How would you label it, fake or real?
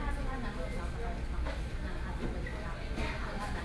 real